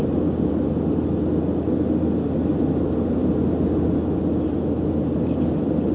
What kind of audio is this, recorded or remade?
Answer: recorded